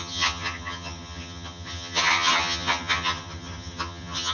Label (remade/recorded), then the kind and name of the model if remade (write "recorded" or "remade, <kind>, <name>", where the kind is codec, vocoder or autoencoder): remade, vocoder, HiFi-GAN